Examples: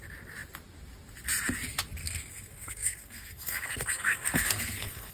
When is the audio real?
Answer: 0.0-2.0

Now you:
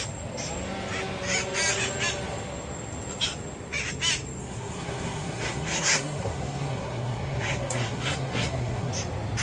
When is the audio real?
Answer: 0.0-4.4; 8.9-9.4

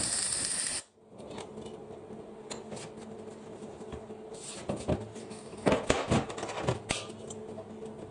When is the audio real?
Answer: 0.0-5.2; 5.7-8.1

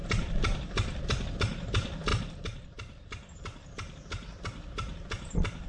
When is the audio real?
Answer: 1.3-5.7

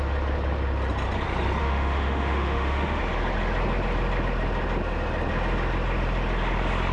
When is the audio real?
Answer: 0.0-1.6; 3.0-6.9